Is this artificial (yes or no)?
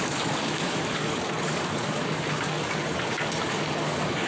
yes